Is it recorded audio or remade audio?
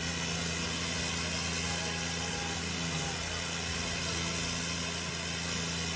recorded